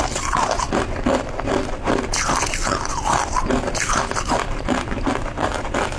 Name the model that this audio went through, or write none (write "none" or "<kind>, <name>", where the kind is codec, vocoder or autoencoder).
none